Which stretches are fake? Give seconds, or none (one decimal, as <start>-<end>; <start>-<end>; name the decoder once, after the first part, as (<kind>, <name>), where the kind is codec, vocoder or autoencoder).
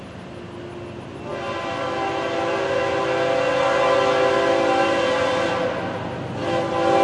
none